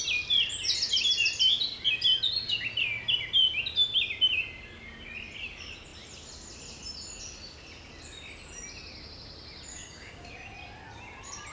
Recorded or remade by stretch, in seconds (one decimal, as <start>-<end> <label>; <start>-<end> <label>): 0.0-9.7 recorded; 9.7-10.3 remade; 10.3-11.5 recorded